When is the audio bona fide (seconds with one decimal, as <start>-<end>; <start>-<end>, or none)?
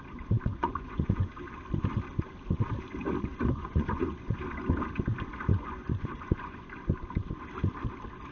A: 0.0-0.6; 1.3-3.3; 4.4-5.5; 6.7-8.3